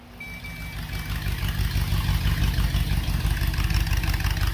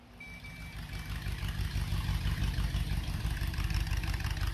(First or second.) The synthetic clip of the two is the second